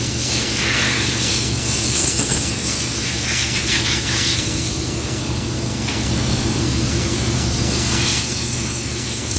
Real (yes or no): no